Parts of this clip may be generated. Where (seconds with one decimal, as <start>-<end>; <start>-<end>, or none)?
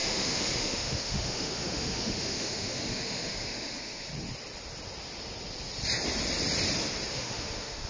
0.0-4.1; 7.1-7.9